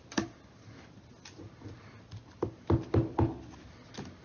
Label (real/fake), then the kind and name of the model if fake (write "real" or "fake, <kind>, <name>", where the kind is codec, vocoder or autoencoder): real